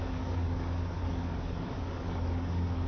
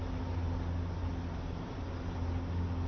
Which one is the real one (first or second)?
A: second